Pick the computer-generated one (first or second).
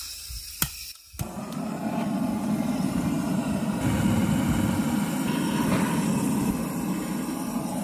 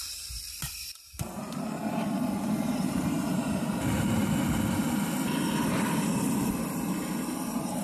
second